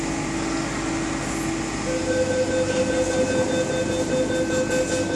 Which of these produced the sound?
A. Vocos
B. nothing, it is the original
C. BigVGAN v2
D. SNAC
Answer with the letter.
B